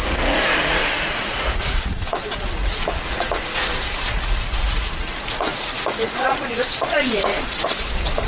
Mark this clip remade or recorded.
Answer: remade